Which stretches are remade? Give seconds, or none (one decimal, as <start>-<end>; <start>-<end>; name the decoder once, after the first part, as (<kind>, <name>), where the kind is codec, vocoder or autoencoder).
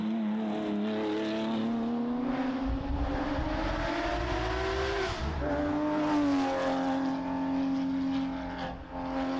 none